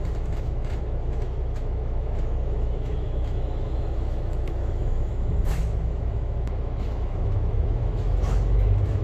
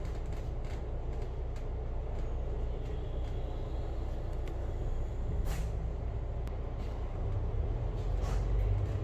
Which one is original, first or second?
second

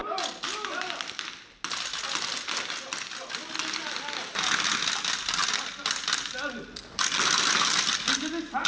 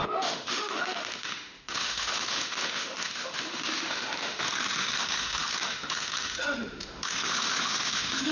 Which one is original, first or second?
first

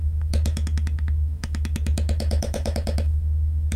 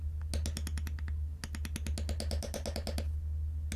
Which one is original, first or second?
second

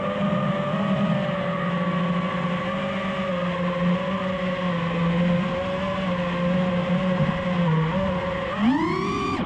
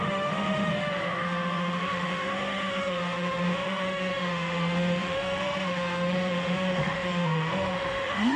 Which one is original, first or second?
first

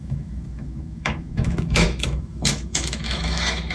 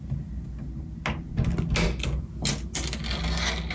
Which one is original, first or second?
second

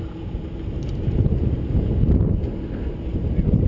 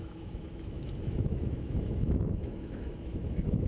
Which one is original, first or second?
first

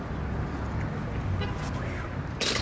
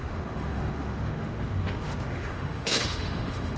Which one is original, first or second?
first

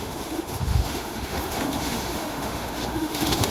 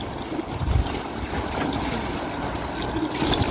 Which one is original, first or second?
second